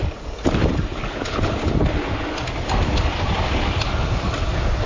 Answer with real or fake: fake